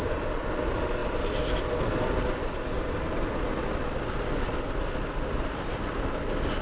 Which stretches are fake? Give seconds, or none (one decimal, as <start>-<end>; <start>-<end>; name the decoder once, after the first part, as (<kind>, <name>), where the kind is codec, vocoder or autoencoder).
1.0-1.6 (vocoder, BigVGAN v2)